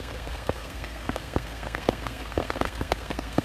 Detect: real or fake fake